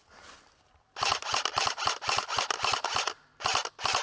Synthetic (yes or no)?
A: no